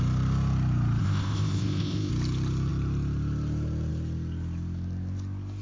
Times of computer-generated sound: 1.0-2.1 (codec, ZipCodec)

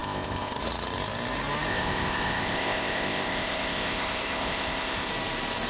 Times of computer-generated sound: 0.0-0.6 (codec, ZipCodec); 1.7-5.1

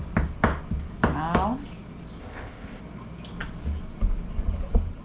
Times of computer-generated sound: 2.2-2.8 (codec, ZipCodec)

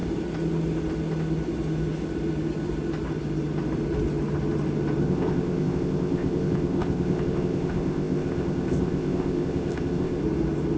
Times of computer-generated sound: 5.0-10.2 (codec, ZipCodec)